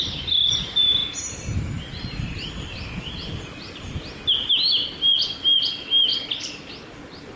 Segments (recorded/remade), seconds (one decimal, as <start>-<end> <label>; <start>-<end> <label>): 0.0-7.4 recorded